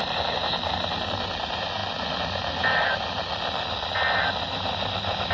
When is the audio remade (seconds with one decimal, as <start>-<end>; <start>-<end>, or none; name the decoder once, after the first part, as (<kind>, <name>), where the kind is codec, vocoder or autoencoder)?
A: none